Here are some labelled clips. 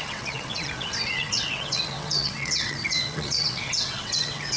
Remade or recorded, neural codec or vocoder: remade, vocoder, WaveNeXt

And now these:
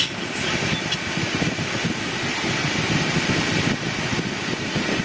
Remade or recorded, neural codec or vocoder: recorded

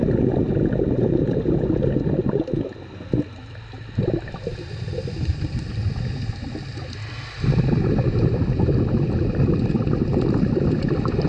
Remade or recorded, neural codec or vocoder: recorded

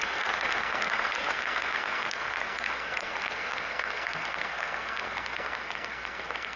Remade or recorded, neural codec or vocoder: remade, codec, SNAC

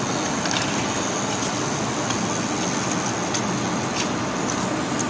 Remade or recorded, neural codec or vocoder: recorded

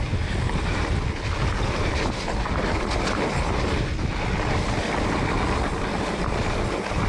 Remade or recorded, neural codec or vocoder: recorded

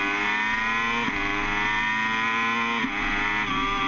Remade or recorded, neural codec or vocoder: recorded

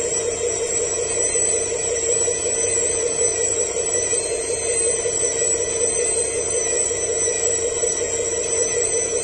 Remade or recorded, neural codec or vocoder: recorded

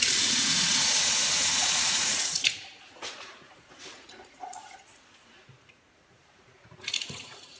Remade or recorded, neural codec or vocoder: remade, vocoder, Vocos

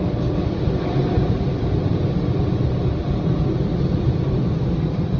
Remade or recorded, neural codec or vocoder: recorded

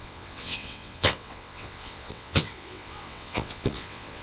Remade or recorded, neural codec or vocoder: remade, vocoder, WaveNeXt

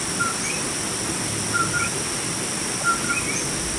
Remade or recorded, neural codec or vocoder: recorded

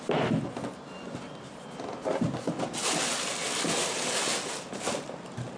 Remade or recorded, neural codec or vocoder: recorded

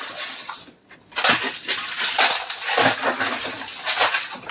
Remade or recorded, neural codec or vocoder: recorded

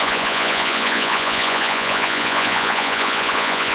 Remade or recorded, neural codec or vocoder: remade, vocoder, Vocos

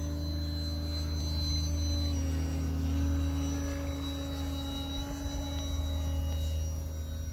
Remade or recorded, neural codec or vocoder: recorded